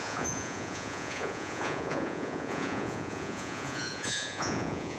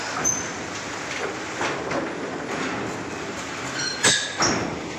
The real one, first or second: second